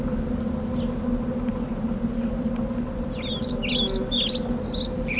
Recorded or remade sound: recorded